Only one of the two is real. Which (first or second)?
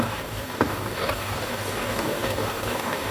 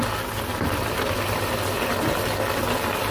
second